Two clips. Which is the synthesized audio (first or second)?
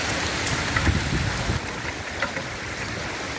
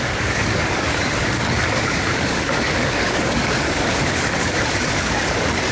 second